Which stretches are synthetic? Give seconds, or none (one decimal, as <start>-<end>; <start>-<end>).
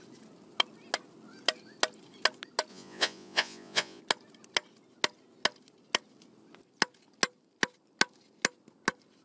2.7-4.0